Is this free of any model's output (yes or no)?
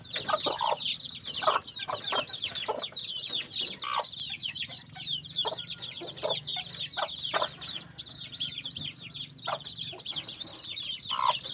yes